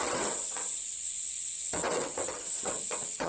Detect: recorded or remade remade